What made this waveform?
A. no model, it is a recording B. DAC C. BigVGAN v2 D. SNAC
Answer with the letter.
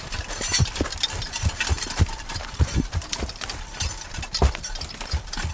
C